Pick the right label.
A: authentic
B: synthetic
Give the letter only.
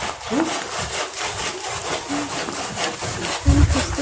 A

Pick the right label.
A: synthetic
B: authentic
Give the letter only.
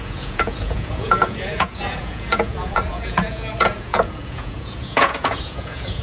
A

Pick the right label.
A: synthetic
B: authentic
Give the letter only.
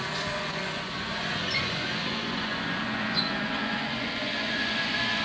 A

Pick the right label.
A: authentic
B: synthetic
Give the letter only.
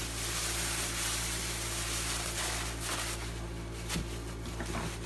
A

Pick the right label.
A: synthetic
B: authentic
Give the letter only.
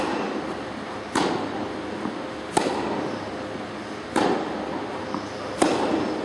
B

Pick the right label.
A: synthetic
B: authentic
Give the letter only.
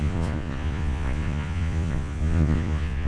A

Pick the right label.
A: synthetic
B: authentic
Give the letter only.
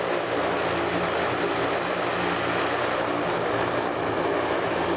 B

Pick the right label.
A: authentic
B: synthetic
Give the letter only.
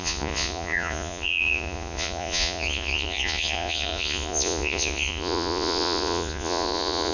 B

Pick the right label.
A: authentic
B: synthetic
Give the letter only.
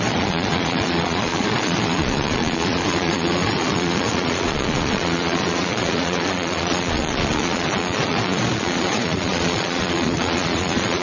B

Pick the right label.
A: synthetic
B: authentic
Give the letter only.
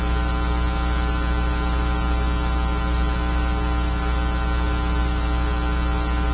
B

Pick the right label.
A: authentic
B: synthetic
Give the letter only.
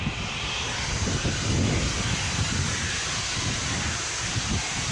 A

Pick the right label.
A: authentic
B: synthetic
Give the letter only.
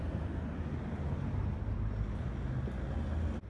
A